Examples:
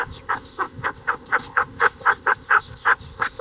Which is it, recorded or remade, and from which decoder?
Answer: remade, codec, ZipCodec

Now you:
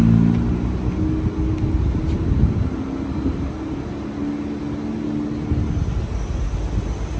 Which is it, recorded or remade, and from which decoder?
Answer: recorded